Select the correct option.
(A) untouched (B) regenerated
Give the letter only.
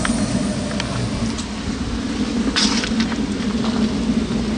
A